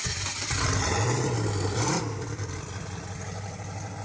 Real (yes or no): no